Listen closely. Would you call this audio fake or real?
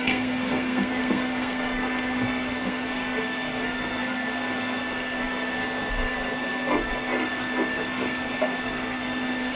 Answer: fake